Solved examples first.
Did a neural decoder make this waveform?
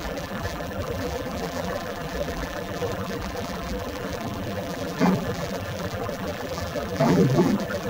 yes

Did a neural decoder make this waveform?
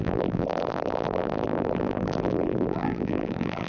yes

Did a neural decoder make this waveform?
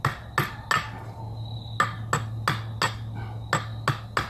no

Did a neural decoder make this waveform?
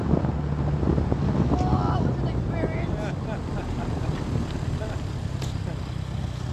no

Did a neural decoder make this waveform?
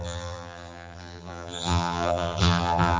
yes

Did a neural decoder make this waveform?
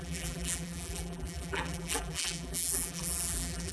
yes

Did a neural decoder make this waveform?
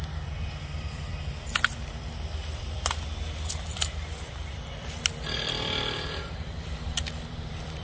yes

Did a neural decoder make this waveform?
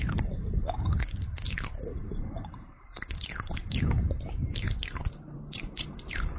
yes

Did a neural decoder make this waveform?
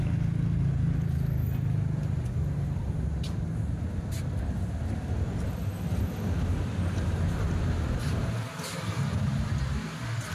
no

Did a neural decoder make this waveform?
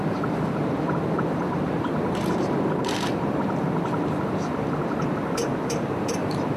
yes